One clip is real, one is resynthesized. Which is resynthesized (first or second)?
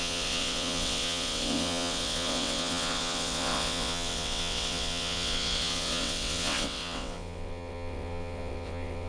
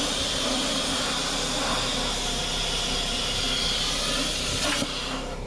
first